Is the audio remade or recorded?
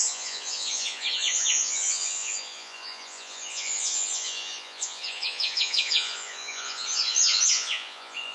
remade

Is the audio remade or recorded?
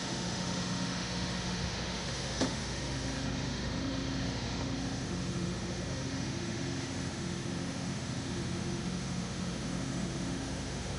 remade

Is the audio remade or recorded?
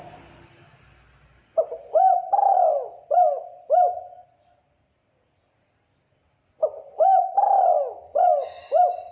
recorded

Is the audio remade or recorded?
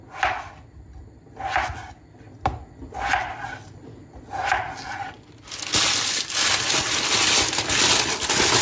recorded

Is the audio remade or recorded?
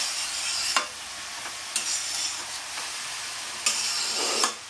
recorded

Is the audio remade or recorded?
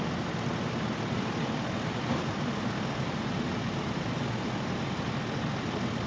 remade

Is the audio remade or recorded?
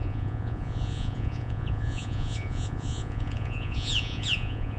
remade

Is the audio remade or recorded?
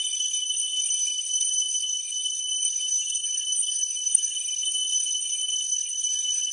remade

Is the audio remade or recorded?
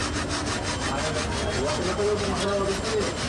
recorded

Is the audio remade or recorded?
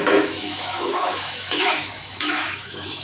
remade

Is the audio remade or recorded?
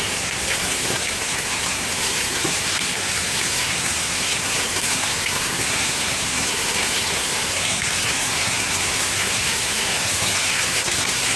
remade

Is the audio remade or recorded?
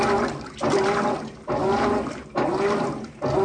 recorded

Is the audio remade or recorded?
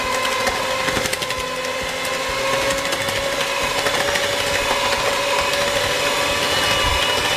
recorded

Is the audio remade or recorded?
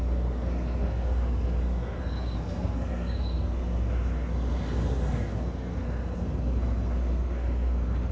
remade